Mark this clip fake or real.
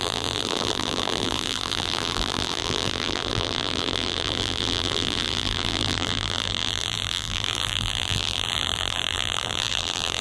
fake